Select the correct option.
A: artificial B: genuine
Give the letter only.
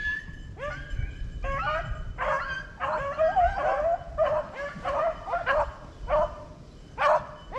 B